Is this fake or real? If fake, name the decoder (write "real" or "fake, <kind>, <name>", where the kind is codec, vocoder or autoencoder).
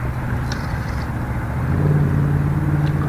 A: real